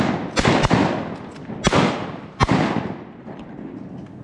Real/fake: real